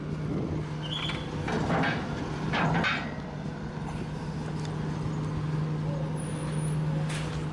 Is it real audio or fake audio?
real